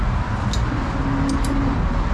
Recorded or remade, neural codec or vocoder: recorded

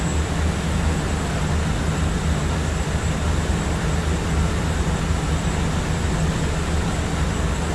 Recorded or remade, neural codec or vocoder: recorded